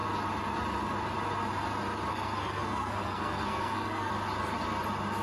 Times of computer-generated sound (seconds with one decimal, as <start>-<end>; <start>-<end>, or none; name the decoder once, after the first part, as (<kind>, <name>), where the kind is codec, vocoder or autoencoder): 2.1-4.1 (codec, SNAC)